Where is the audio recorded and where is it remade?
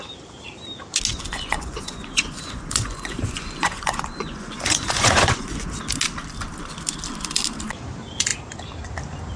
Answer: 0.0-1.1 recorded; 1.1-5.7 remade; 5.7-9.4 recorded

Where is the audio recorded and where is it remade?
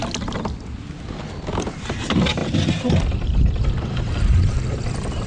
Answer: 0.0-5.3 recorded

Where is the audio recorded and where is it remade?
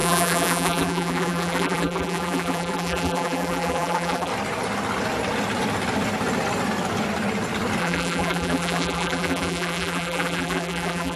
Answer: 0.0-4.3 remade; 4.3-7.8 recorded; 7.8-11.2 remade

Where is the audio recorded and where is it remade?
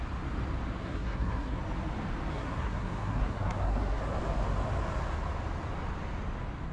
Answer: 0.0-0.8 recorded; 0.8-1.6 remade; 1.6-2.3 recorded; 2.3-4.0 remade; 4.0-6.7 recorded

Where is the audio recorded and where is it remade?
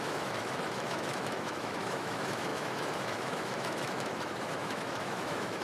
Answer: 0.0-5.6 remade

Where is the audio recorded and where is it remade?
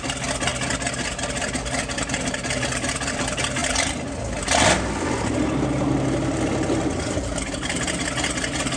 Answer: 0.0-8.8 recorded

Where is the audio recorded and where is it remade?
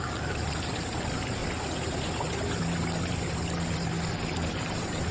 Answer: 0.0-1.4 remade; 1.4-4.5 recorded; 4.5-5.1 remade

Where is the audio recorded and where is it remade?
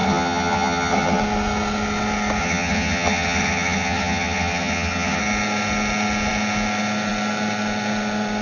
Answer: 0.0-1.2 remade; 1.2-2.4 recorded; 2.4-5.2 remade; 5.2-8.4 recorded